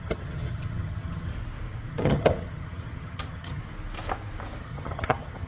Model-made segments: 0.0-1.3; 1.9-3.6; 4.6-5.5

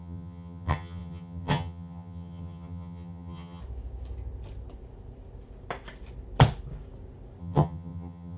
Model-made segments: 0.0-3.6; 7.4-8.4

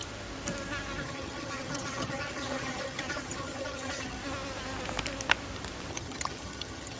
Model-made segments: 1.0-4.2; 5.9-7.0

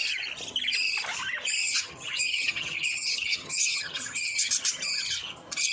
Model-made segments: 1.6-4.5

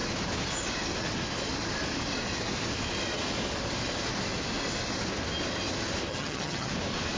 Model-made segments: 6.1-6.7

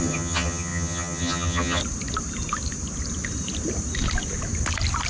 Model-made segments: 0.0-1.8

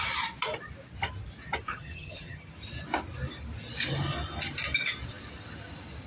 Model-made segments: 1.7-2.5